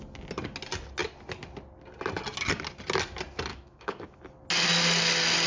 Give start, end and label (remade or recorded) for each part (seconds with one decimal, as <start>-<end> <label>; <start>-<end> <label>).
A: 0.0-3.5 recorded; 3.5-4.2 remade; 4.2-5.5 recorded